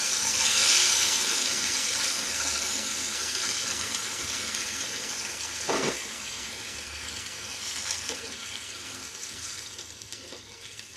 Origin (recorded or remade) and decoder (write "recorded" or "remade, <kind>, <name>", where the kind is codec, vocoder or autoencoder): remade, codec, SNAC